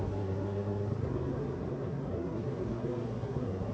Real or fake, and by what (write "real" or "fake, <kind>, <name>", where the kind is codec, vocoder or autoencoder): fake, codec, SNAC